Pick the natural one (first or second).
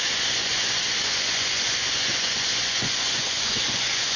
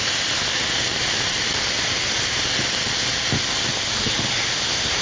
second